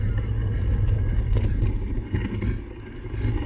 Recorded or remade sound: recorded